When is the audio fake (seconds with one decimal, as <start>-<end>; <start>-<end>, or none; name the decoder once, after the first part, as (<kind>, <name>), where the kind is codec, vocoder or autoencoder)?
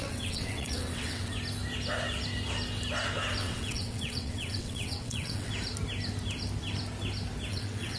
0.0-1.3 (vocoder, WaveNeXt); 3.4-5.5; 7.5-8.0